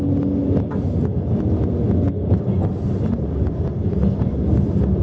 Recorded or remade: recorded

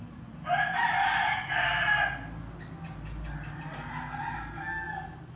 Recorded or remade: recorded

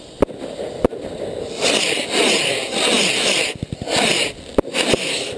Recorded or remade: recorded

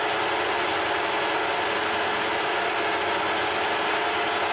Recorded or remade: recorded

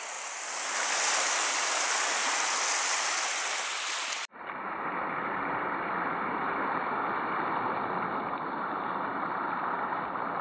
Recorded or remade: recorded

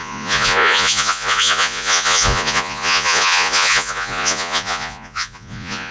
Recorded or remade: remade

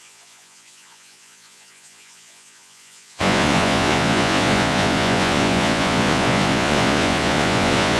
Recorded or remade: remade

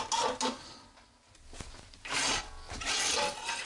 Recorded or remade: recorded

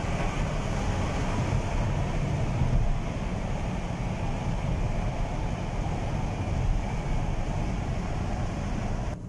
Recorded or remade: recorded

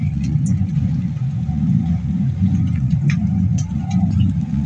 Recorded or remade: remade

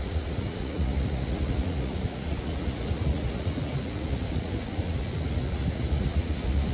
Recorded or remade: remade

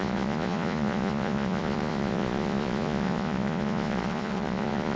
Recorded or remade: remade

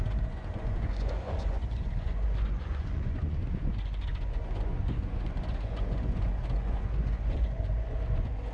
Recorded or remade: remade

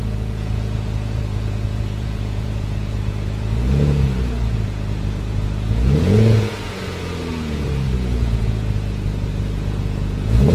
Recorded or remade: remade